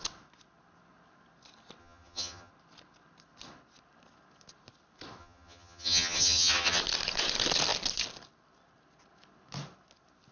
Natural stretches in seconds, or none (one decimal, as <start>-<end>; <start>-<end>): 0.0-1.8; 2.5-5.2; 6.8-10.3

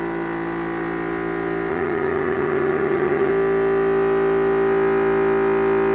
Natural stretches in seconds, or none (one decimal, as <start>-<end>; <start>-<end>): 0.0-1.7; 3.3-5.9